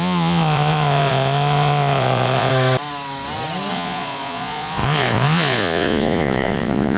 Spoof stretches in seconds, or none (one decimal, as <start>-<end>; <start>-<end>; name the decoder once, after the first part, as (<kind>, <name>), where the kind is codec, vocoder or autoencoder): 0.0-2.5 (vocoder, Vocos); 3.7-7.0